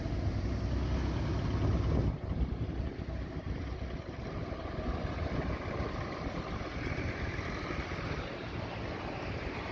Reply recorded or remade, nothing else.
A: recorded